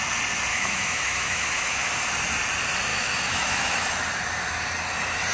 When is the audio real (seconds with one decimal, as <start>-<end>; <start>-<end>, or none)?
0.0-0.5; 1.9-2.9; 3.9-5.3